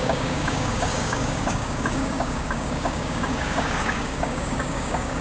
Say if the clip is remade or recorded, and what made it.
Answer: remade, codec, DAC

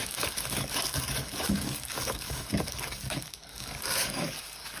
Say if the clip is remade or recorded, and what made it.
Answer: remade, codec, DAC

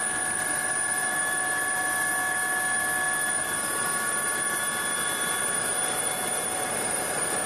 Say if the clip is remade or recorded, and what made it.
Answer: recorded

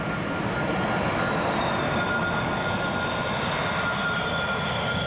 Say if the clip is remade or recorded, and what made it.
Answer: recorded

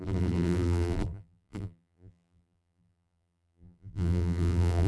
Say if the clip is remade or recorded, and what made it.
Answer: remade, vocoder, BigVGAN v2